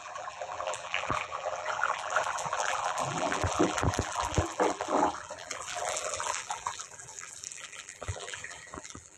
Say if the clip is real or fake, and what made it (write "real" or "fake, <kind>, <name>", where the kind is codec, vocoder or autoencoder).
fake, vocoder, BigVGAN v2